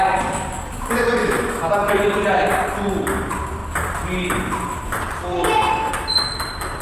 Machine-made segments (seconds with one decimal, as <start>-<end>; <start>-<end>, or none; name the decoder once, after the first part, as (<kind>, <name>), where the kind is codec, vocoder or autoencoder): 1.2-1.7 (autoencoder, DAC-VAE)